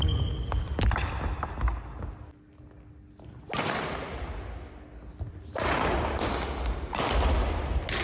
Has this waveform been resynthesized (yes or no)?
no